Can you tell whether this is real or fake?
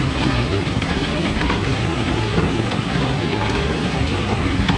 fake